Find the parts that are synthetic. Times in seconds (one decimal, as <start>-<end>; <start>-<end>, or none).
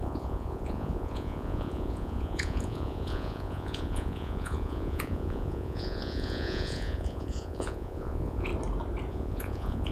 0.0-8.5; 9.1-9.9